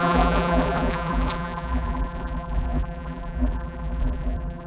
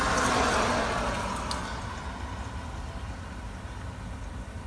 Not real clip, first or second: first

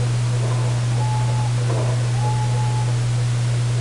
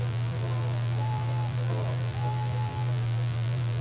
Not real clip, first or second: second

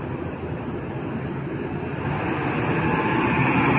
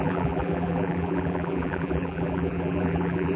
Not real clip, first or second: second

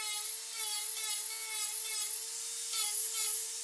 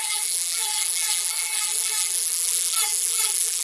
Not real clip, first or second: second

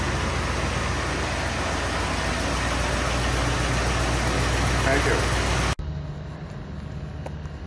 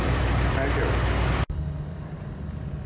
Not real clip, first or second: second